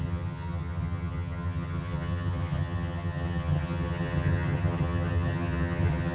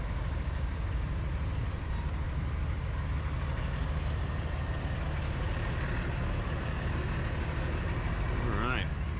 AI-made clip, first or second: first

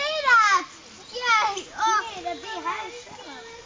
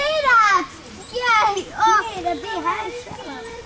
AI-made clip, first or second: second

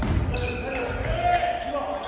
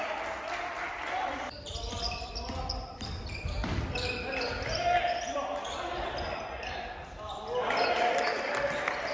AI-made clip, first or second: second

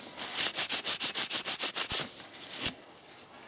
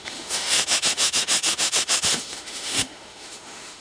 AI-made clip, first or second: second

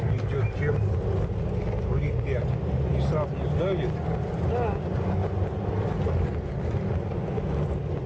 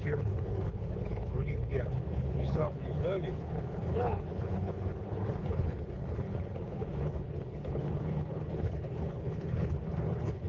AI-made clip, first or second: second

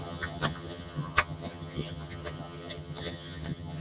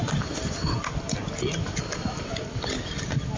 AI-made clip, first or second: first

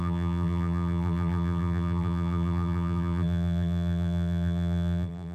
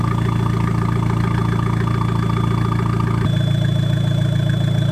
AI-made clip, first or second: first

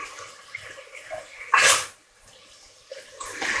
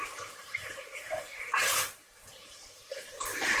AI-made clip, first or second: second